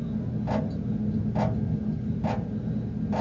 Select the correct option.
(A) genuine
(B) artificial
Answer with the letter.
A